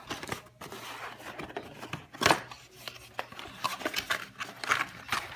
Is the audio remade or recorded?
recorded